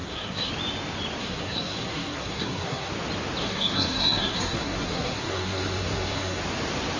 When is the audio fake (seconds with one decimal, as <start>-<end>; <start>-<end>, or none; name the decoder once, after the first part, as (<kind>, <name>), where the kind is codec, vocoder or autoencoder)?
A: 0.0-0.5 (codec, SNAC); 1.2-2.9; 3.4-6.4